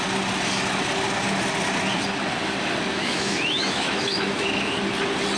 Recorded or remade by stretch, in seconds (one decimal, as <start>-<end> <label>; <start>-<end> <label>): 0.0-2.9 recorded; 2.9-4.8 remade; 4.8-5.4 recorded